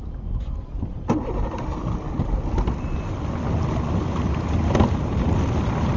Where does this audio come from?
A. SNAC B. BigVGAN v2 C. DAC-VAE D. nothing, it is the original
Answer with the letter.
D